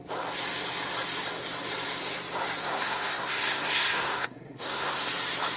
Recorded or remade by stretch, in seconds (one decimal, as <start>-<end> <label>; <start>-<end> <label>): 0.0-2.6 recorded; 2.6-5.1 remade; 5.1-5.6 recorded